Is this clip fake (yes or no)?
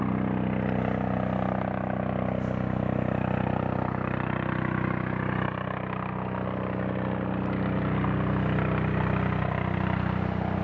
no